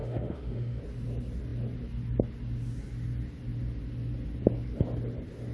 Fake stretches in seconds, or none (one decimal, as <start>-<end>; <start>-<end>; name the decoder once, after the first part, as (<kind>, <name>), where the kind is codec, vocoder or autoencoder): 0.0-0.8 (autoencoder, DAC-VAE)